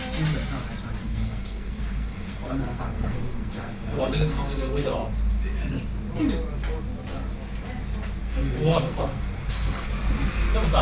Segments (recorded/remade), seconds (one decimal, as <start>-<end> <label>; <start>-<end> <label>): 0.0-1.0 recorded; 1.0-5.1 remade; 5.1-8.2 recorded; 8.2-9.9 remade; 9.9-10.8 recorded